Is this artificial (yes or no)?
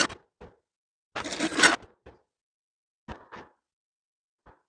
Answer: no